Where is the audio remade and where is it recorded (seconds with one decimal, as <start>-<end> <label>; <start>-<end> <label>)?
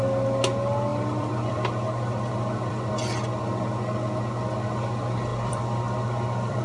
0.0-0.9 recorded; 0.9-2.9 remade; 2.9-5.3 recorded; 5.3-6.6 remade